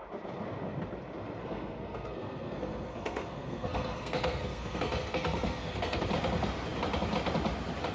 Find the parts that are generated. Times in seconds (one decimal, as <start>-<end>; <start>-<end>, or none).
1.4-6.1